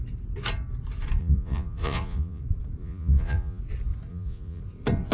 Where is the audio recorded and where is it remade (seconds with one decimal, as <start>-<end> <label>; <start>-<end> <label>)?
0.0-1.2 recorded; 1.2-2.4 remade; 2.4-2.8 recorded; 2.8-3.6 remade; 3.6-4.1 recorded; 4.1-4.6 remade; 4.6-5.1 recorded